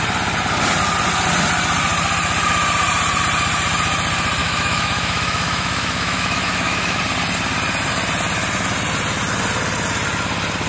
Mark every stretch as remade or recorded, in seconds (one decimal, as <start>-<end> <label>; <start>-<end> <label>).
0.0-4.4 recorded; 4.4-7.0 remade; 7.0-10.7 recorded